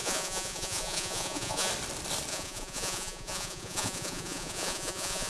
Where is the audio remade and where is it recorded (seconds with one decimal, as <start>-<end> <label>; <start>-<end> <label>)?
0.0-1.7 remade; 1.7-2.3 recorded; 2.3-5.3 remade